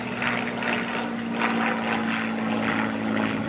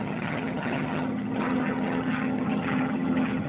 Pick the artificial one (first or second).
second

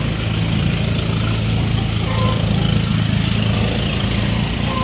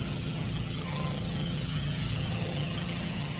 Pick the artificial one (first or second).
second